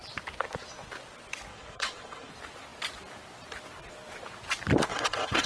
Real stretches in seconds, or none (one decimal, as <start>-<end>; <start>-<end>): 0.0-1.5; 2.3-4.9